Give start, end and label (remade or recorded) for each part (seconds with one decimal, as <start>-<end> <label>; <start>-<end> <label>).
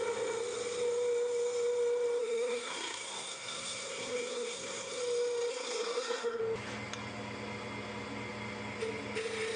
0.0-2.2 recorded; 2.2-5.0 remade; 5.0-5.5 recorded; 5.5-6.4 remade; 6.4-9.6 recorded